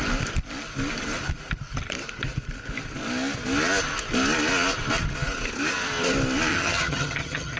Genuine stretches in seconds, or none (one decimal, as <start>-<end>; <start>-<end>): 0.0-6.5